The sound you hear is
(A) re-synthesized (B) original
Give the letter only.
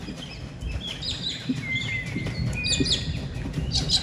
B